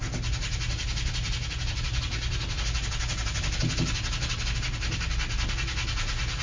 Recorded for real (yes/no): yes